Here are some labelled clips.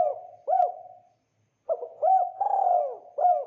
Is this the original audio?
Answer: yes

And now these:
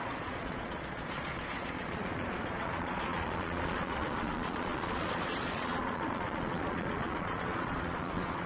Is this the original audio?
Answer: no